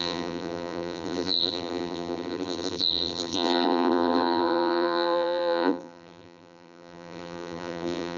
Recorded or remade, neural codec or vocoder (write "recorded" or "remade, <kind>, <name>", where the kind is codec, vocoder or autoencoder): remade, vocoder, BigVGAN v2